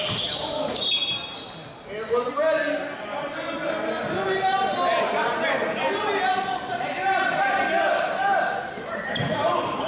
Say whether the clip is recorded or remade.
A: recorded